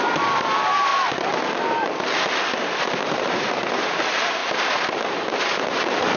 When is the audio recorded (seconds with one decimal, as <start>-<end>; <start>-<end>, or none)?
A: 0.9-2.8